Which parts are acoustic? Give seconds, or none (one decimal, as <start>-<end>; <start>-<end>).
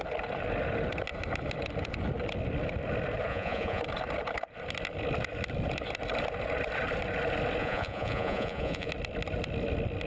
0.0-3.3; 3.8-7.6; 8.9-10.1